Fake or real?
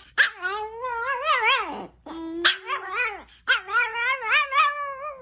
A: real